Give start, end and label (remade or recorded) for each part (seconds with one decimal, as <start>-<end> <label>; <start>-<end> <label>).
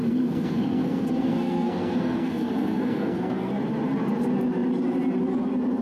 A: 0.0-3.5 remade; 3.5-5.8 recorded